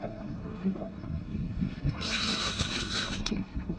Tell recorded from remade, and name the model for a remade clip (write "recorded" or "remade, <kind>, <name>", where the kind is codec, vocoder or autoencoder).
remade, codec, SNAC